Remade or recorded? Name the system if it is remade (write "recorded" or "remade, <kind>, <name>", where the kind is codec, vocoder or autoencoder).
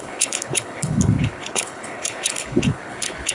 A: remade, codec, HILCodec